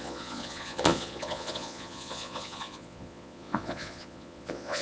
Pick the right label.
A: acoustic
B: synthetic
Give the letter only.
B